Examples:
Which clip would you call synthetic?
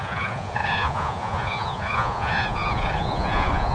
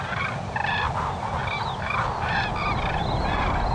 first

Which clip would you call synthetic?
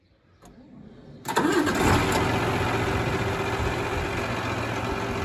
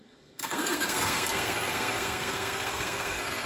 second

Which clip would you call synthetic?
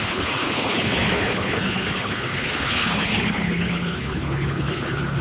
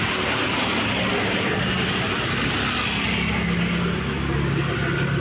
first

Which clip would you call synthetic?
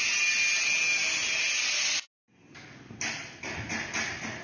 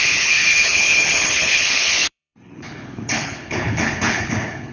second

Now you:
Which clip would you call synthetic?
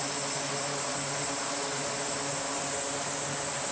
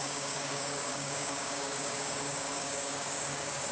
second